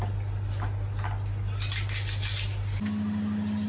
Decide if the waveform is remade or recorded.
recorded